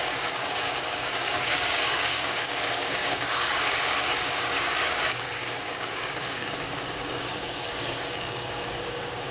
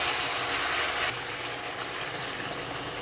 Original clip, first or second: second